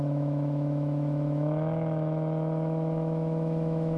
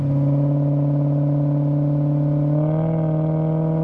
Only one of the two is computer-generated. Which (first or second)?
first